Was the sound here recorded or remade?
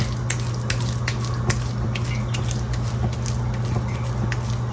recorded